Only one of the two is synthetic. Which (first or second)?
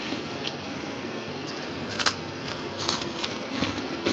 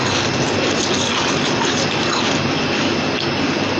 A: first